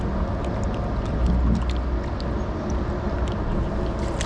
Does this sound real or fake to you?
real